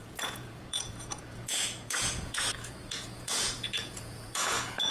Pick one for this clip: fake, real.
fake